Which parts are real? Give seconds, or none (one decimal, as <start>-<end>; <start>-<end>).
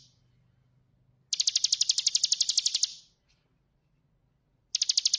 0.0-5.2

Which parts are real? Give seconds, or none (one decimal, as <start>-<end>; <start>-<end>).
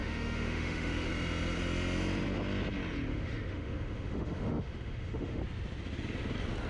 1.1-3.1; 5.4-6.7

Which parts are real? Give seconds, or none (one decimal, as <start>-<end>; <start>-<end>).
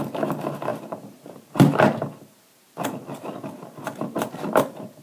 0.0-5.0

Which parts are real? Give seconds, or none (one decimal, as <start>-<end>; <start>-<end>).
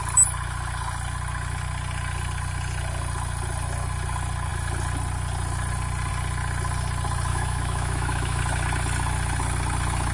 0.0-7.3; 8.4-10.1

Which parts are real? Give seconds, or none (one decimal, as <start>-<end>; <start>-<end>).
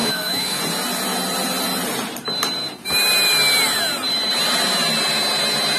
0.6-5.8